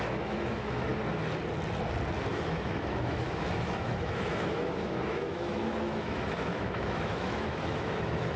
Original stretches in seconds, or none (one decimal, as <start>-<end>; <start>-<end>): 0.9-2.3